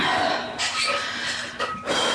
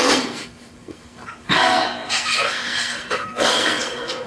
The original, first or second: first